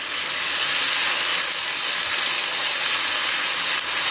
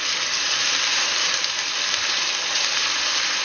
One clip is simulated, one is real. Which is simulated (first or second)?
second